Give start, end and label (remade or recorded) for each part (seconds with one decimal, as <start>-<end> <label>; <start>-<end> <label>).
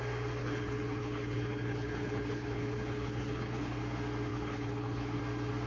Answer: 0.0-0.4 recorded; 0.4-3.8 remade; 3.8-4.3 recorded; 4.3-5.2 remade; 5.2-5.7 recorded